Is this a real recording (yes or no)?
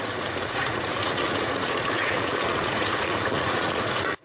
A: no